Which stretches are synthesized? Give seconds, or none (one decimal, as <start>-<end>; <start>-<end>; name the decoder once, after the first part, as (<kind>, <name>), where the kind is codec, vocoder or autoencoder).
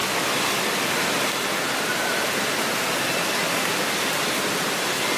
none